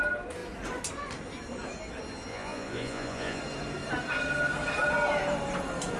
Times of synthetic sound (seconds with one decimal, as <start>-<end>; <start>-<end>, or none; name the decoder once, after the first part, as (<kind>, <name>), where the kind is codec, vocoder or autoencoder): 2.3-3.4 (vocoder, Vocos)